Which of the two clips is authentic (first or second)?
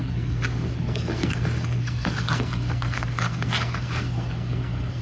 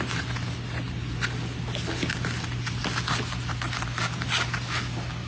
second